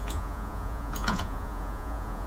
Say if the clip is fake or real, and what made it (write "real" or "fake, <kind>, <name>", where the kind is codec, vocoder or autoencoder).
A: fake, vocoder, Vocos